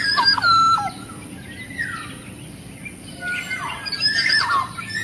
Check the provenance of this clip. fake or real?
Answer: real